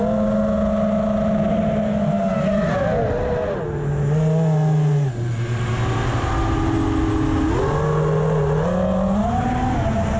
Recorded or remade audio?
recorded